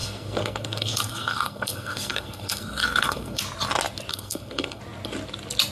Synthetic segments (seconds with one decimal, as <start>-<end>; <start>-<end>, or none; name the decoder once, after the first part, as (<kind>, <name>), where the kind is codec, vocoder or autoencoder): 0.0-3.4 (codec, SNAC); 4.1-4.8

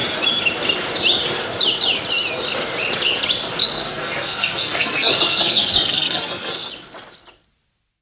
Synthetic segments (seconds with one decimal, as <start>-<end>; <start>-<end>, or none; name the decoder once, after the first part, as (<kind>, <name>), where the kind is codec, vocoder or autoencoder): 3.6-6.7 (codec, SNAC)

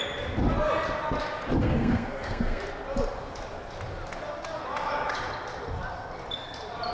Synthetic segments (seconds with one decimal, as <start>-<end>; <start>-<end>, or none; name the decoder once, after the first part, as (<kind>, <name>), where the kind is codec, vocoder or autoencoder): 1.6-2.6 (codec, SNAC)

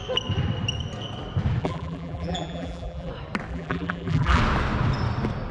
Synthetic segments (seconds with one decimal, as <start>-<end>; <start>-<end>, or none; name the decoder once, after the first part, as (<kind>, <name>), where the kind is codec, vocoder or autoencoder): 1.6-3.1 (vocoder, BigVGAN v2); 3.5-4.4

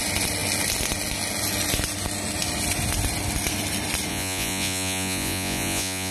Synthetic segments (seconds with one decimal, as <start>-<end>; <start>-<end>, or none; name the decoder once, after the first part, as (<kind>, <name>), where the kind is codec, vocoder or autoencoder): 4.1-6.1 (vocoder, Vocos)

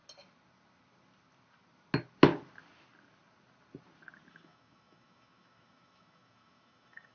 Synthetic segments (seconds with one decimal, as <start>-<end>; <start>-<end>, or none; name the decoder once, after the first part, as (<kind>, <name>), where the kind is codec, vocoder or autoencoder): 4.3-7.1 (autoencoder, DAC-VAE)